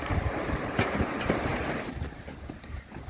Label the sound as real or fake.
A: fake